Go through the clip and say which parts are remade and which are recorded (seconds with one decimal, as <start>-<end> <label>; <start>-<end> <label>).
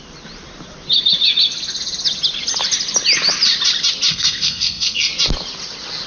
0.0-4.1 recorded; 4.1-5.1 remade; 5.1-6.1 recorded